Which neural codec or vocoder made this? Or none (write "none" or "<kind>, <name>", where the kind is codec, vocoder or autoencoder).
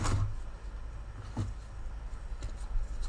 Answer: none